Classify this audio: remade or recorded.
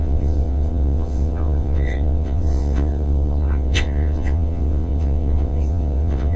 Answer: remade